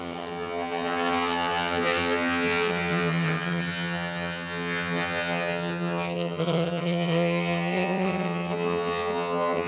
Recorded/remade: remade